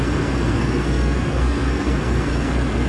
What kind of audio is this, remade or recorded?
remade